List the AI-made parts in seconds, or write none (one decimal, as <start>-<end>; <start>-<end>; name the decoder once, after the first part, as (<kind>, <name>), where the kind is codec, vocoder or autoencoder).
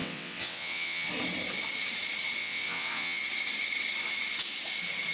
0.0-1.1 (vocoder, WaveNeXt); 2.4-3.2